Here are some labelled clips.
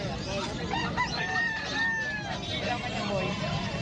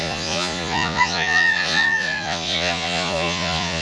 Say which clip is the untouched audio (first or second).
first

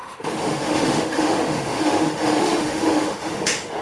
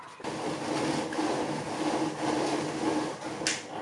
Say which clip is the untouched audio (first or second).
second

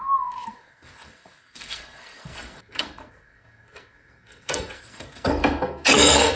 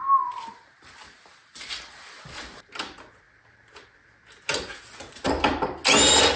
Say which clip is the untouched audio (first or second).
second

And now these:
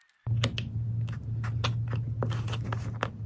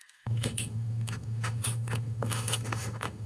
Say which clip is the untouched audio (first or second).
first